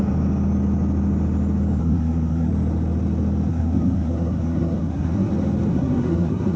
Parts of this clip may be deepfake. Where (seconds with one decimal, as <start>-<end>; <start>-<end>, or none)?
1.8-2.5; 3.5-5.3; 5.7-6.6